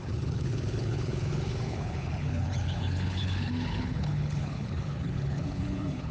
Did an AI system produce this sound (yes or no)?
yes